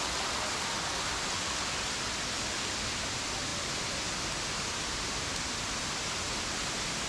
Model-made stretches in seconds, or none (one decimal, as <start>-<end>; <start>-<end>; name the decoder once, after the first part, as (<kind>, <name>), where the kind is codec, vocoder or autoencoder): none